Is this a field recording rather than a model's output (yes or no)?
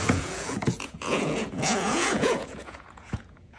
no